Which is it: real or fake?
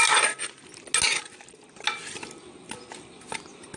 real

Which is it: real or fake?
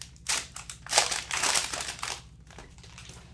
fake